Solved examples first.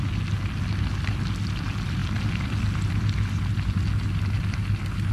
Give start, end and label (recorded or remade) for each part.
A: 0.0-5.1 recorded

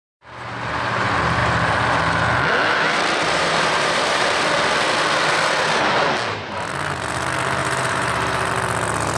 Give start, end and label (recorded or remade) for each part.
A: 0.0-3.2 recorded; 3.2-4.4 remade; 4.4-7.6 recorded; 7.6-8.5 remade; 8.5-9.2 recorded